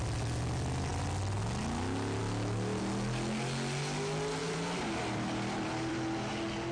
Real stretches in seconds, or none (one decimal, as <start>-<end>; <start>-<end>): 0.0-0.9; 1.6-4.4; 6.3-6.7